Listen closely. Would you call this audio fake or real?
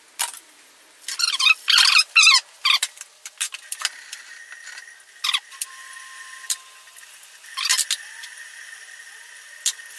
real